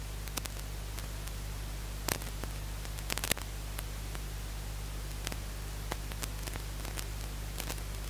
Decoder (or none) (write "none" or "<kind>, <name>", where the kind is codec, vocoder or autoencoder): none